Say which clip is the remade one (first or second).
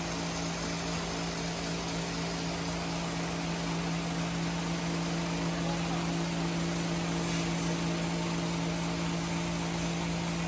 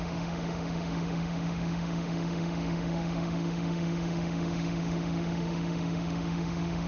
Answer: second